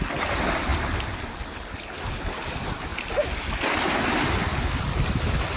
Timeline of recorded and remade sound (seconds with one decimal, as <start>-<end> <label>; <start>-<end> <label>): 0.0-5.6 recorded

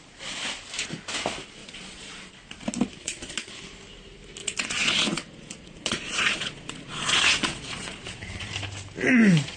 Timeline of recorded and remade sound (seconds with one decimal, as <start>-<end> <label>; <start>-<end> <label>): 0.0-1.6 recorded; 1.6-2.3 remade; 2.3-3.0 recorded; 3.0-3.5 remade; 3.5-4.4 recorded; 4.4-8.5 remade; 8.5-9.6 recorded